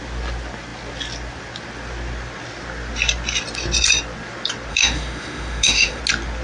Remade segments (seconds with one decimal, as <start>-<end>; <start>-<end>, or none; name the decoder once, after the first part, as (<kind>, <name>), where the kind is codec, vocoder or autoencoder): 4.7-6.0 (autoencoder, DAC-VAE)